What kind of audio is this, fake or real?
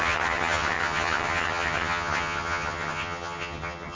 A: fake